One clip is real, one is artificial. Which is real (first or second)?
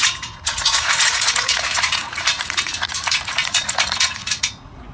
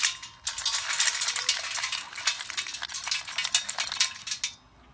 second